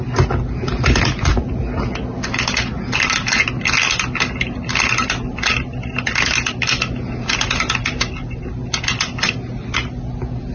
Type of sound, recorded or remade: recorded